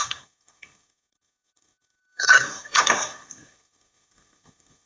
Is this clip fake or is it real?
fake